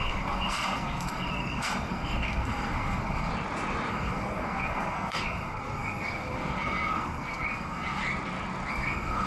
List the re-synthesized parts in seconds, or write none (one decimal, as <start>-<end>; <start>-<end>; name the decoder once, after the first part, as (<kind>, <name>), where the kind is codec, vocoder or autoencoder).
0.0-3.3 (codec, SNAC); 3.9-8.0; 8.7-9.3